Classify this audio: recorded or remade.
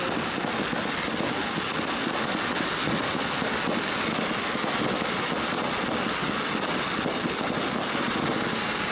recorded